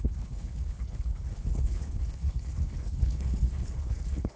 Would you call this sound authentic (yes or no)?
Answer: no